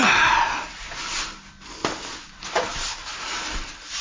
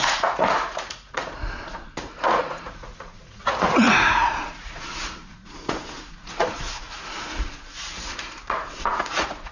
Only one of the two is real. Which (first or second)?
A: first